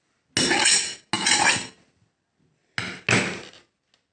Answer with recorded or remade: recorded